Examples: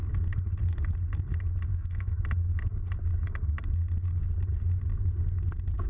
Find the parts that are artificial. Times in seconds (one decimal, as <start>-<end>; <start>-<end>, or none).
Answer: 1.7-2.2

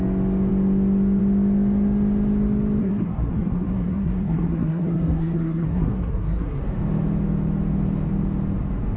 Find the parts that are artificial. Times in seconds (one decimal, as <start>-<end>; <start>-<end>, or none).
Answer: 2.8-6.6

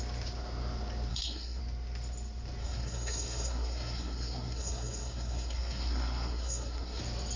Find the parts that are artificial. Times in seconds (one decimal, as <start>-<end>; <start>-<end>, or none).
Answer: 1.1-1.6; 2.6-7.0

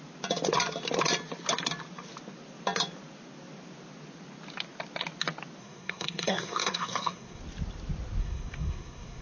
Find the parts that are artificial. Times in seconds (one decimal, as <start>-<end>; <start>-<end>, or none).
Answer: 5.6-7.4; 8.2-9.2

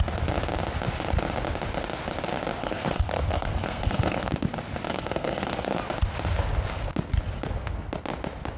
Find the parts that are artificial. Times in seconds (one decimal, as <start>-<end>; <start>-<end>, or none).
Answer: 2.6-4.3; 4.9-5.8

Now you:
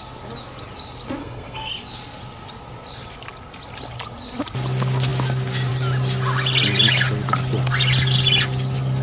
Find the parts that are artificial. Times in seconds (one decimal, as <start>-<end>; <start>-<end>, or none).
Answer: 1.2-1.7

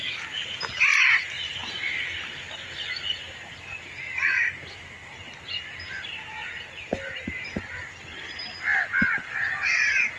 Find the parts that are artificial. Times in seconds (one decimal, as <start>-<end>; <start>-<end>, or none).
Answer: none

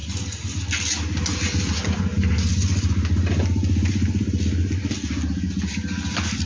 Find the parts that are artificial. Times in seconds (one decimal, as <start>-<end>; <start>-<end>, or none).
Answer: none